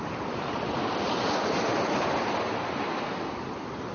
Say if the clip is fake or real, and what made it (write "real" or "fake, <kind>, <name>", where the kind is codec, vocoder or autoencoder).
real